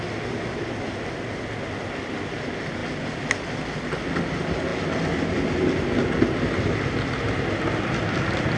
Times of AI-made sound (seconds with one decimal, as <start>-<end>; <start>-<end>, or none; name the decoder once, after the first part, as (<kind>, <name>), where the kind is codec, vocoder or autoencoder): none